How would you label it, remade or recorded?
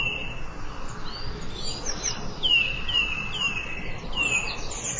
recorded